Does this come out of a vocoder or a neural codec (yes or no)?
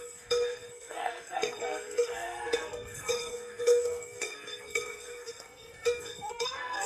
yes